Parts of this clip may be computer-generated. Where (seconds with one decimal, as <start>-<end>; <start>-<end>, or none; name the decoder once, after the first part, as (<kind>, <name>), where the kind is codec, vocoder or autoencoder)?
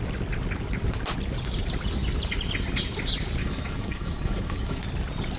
3.4-4.8 (autoencoder, DAC-VAE)